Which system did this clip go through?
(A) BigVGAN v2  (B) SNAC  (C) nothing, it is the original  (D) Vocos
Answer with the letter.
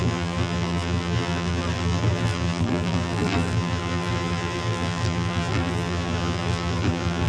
A